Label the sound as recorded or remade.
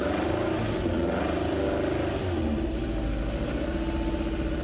recorded